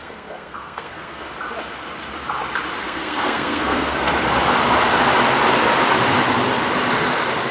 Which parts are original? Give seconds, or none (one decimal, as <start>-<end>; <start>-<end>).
1.3-2.8; 4.1-7.5